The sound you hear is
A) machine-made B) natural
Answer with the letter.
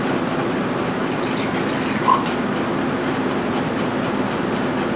B